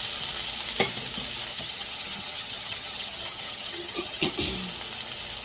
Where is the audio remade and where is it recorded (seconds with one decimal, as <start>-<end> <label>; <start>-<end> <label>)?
0.0-1.5 recorded; 1.5-4.3 remade; 4.3-5.4 recorded

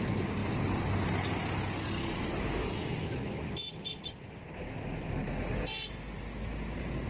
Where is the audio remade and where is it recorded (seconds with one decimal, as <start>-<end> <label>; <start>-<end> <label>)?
0.0-7.1 recorded

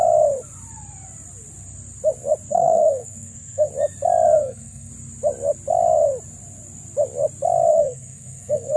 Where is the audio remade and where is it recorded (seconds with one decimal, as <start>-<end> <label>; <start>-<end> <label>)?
0.0-2.5 recorded; 2.5-3.7 remade; 3.7-4.4 recorded; 4.4-4.9 remade; 4.9-7.7 recorded; 7.7-8.8 remade

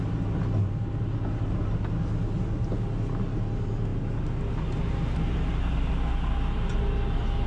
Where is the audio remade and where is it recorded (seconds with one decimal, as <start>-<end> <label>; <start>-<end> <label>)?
0.0-7.5 recorded

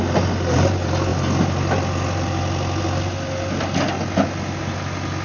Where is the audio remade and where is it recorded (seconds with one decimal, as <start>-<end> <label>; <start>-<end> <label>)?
0.0-5.2 recorded

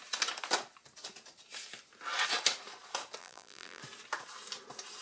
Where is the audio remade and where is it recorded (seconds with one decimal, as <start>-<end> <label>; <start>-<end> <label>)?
0.0-3.2 recorded; 3.2-3.8 remade; 3.8-5.0 recorded

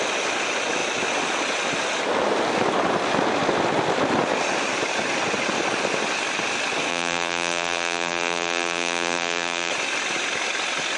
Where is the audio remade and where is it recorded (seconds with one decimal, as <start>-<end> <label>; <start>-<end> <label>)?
0.0-6.9 recorded; 6.9-9.7 remade; 9.7-11.0 recorded

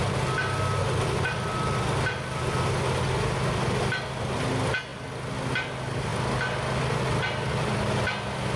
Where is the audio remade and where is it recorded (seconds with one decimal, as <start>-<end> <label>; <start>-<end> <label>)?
0.0-8.6 recorded